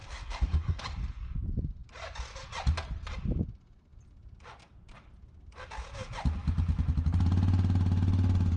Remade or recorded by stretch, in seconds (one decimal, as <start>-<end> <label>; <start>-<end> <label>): 0.0-0.8 remade; 0.8-8.6 recorded